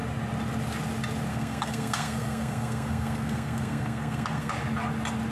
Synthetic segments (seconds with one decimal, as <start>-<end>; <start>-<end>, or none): 1.3-4.5